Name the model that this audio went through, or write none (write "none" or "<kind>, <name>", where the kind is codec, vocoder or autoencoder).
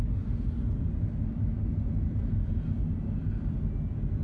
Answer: none